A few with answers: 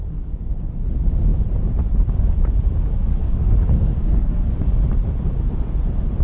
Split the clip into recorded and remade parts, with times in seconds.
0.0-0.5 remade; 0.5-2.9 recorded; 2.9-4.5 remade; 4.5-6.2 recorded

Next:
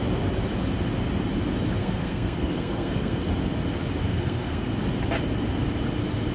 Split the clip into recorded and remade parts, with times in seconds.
0.0-1.8 recorded; 1.8-3.2 remade; 3.2-4.1 recorded; 4.1-4.7 remade; 4.7-6.3 recorded

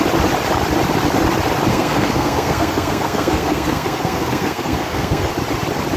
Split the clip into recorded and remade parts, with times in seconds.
0.0-1.7 recorded; 1.7-5.3 remade; 5.3-6.0 recorded

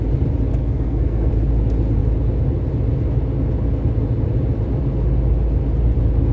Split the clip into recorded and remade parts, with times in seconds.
0.0-0.5 recorded; 0.5-1.3 remade; 1.3-6.3 recorded

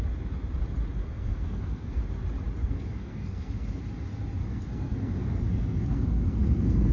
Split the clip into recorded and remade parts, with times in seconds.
0.0-1.0 recorded; 1.0-2.0 remade; 2.0-2.6 recorded; 2.6-3.8 remade; 3.8-4.4 recorded; 4.4-6.9 remade

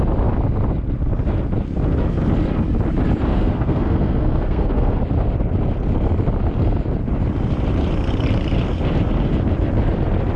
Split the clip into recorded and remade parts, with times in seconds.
0.0-3.3 recorded; 3.3-5.0 remade; 5.0-10.4 recorded